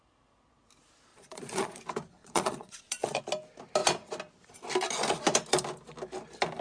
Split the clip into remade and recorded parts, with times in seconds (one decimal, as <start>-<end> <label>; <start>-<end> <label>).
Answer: 0.0-1.1 recorded; 1.1-1.8 remade; 1.8-2.2 recorded; 2.2-3.2 remade; 3.2-6.6 recorded